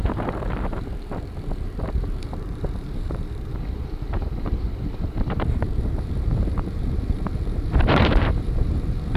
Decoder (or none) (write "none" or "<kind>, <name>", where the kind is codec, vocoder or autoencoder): vocoder, BigVGAN v2